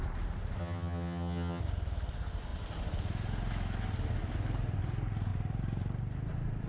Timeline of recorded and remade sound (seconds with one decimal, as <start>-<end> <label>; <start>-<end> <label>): 0.0-0.6 recorded; 0.6-1.6 remade; 1.6-6.7 recorded